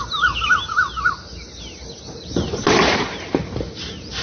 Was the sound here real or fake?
real